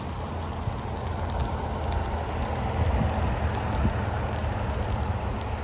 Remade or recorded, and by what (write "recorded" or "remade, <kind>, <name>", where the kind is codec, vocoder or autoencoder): recorded